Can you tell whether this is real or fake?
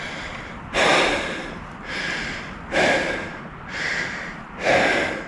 real